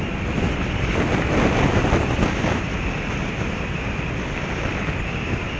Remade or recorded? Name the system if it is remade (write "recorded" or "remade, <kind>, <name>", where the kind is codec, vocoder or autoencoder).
recorded